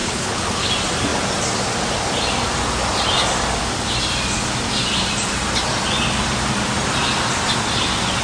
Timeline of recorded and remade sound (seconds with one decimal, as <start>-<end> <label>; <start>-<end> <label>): 0.0-0.7 remade; 0.7-8.2 recorded